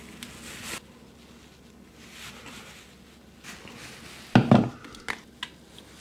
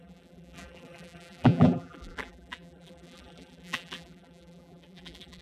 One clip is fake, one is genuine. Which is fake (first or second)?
second